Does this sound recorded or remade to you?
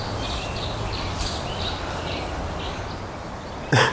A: recorded